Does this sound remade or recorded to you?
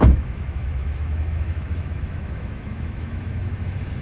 remade